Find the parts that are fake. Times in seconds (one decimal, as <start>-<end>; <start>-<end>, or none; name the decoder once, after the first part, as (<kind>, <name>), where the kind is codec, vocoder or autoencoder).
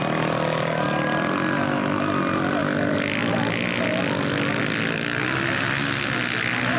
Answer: none